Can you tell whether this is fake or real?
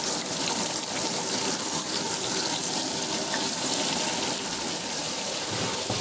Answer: fake